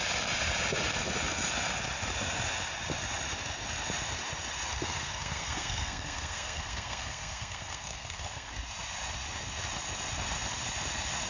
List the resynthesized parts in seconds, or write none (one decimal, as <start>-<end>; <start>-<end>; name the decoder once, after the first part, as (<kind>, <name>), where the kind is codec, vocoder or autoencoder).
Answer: 4.7-8.5 (codec, SNAC)